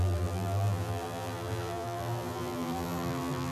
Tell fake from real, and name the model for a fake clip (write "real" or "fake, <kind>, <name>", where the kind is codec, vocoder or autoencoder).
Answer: fake, vocoder, BigVGAN v2